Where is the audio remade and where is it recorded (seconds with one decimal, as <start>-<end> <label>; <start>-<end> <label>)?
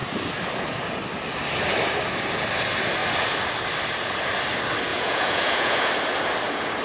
0.0-4.9 recorded; 4.9-5.9 remade; 5.9-6.8 recorded